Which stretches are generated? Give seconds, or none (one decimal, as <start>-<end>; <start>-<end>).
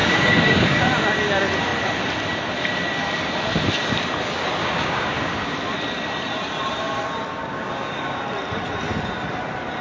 0.0-0.9; 4.6-5.5; 7.3-8.2